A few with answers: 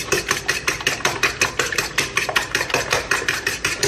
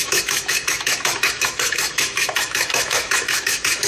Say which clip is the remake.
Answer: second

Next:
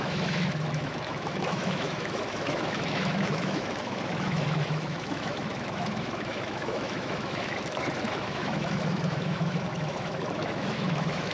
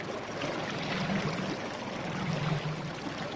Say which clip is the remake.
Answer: first